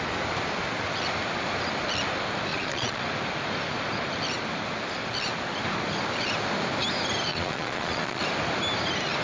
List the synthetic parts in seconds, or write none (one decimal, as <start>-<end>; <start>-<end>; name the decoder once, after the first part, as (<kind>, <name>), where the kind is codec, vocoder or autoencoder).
2.5-3.0 (vocoder, Vocos); 7.3-8.2